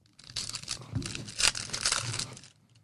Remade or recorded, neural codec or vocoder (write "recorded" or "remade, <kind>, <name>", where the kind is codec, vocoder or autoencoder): remade, vocoder, BigVGAN v2